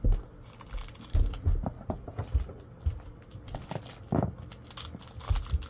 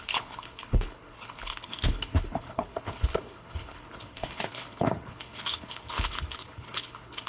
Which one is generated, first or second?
second